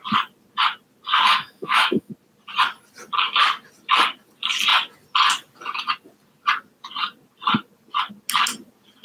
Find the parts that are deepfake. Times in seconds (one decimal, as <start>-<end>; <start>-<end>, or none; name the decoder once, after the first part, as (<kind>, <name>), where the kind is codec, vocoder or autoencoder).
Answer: 1.3-2.1 (autoencoder, DAC-VAE)